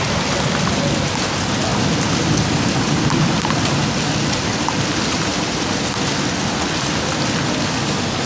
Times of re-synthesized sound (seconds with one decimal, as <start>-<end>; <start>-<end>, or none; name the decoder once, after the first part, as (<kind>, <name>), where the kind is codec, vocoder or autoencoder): 5.3-5.9 (vocoder, BigVGAN v2)